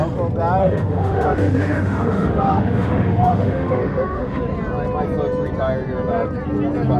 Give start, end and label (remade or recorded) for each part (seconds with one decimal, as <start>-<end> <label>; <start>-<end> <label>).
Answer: 0.0-0.6 recorded; 0.6-4.4 remade; 4.4-7.0 recorded